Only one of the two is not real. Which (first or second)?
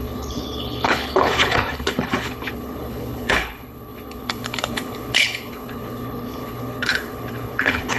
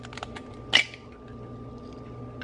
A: first